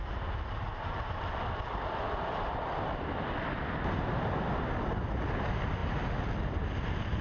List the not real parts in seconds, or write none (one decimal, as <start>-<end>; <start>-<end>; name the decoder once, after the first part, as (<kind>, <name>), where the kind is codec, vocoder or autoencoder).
none